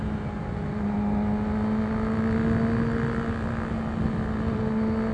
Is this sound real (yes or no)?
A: yes